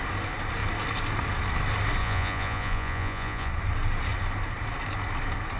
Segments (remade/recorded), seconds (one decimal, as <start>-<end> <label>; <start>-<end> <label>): 0.0-2.0 recorded; 2.0-3.5 remade; 3.5-5.6 recorded